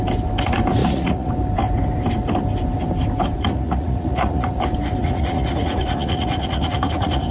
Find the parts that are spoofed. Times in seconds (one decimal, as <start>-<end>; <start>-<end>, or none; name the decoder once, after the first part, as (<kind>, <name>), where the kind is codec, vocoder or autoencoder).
0.8-1.3 (vocoder, Vocos); 3.3-4.6; 5.0-7.3

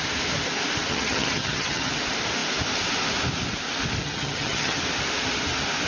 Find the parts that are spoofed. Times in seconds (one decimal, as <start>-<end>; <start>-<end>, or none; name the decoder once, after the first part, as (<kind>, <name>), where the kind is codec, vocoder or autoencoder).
0.9-1.9 (vocoder, HiFi-GAN); 4.0-4.8

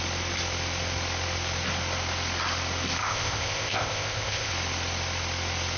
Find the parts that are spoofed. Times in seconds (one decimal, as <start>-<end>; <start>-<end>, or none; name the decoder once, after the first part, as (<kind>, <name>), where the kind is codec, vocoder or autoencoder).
3.0-4.5 (codec, ZipCodec)

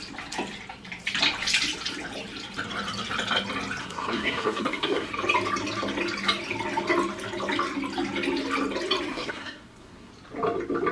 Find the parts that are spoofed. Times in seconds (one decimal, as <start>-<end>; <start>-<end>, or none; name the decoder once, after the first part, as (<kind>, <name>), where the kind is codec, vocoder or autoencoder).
3.8-5.1 (codec, SNAC); 9.1-10.1

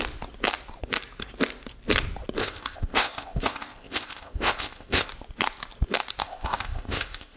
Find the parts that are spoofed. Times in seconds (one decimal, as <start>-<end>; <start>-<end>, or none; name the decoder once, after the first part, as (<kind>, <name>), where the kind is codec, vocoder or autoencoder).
2.4-5.1 (codec, ZipCodec); 6.2-7.4

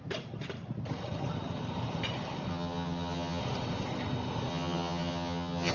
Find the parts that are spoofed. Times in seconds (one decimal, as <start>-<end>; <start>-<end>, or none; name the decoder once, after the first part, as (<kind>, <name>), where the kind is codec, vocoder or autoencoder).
2.5-3.4 (vocoder, HiFi-GAN); 4.5-5.7